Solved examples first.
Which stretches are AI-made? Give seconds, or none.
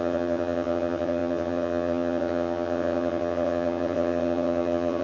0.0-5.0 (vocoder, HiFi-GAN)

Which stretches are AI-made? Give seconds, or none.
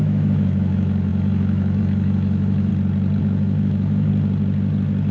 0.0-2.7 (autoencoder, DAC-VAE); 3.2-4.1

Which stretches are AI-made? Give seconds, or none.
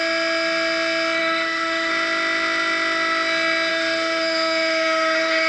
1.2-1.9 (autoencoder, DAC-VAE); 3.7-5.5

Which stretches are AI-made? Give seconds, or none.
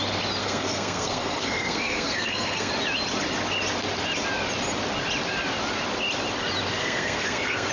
0.4-2.7 (codec, SNAC); 6.8-7.7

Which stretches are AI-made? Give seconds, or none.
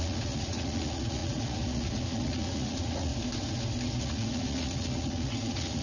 0.0-3.1 (vocoder, Vocos); 4.0-5.8